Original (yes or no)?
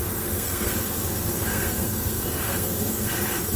no